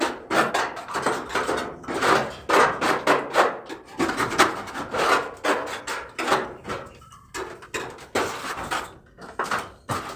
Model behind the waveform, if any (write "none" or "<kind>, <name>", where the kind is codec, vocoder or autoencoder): none